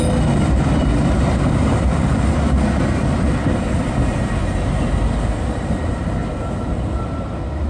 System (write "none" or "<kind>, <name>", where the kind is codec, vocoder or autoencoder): none